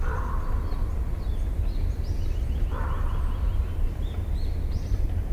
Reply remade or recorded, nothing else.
recorded